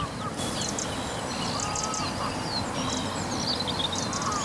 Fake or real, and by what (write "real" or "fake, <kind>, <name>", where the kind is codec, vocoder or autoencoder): real